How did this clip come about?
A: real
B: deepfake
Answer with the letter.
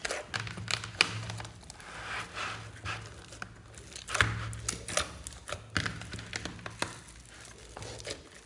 A